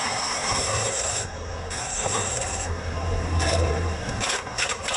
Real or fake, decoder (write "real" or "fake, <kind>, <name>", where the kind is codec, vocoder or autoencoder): fake, codec, SNAC